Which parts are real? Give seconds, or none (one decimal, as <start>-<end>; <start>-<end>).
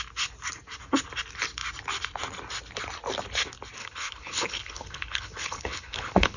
0.0-3.8